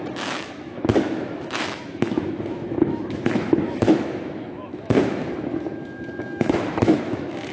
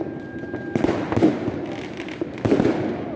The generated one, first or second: first